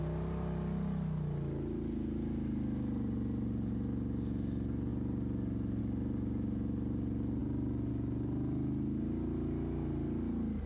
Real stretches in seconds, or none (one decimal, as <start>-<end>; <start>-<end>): 0.0-7.4; 7.9-10.7